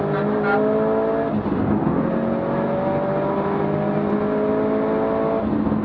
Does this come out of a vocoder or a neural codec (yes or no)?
no